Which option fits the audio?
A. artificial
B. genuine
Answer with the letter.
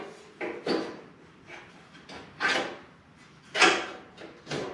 B